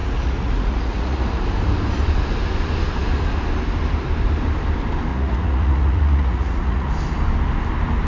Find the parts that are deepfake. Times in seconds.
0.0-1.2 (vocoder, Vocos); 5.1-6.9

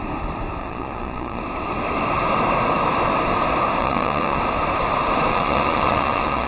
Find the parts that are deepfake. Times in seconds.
0.6-1.4 (vocoder, Vocos); 3.8-4.4; 5.3-6.5

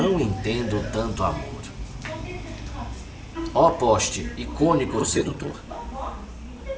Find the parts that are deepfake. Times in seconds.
5.0-5.5 (vocoder, HiFi-GAN)

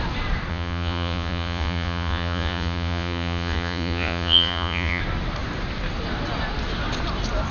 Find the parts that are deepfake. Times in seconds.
0.5-5.0 (vocoder, Vocos)

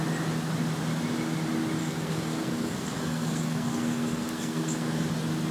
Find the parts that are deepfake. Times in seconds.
1.8-5.1 (codec, SNAC)

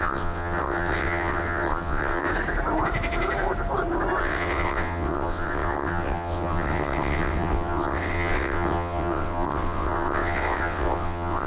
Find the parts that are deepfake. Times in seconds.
0.0-2.3 (vocoder, WaveNeXt); 4.2-11.5

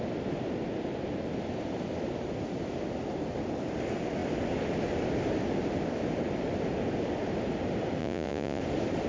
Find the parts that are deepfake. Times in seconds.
8.0-8.6 (vocoder, Vocos)

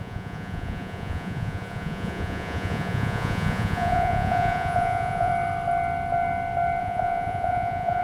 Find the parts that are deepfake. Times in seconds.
0.0-5.3 (vocoder, Vocos); 6.8-8.0